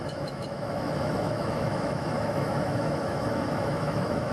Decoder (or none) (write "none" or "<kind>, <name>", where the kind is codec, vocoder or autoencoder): autoencoder, DAC-VAE